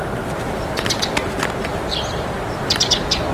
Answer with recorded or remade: recorded